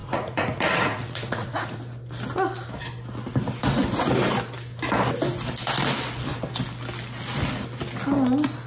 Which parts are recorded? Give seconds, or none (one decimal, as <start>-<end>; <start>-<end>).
1.8-8.7